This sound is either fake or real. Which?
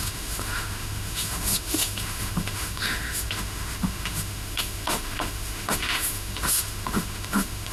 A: fake